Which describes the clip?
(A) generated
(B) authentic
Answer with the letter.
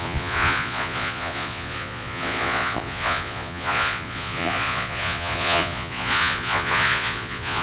A